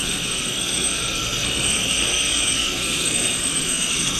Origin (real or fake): fake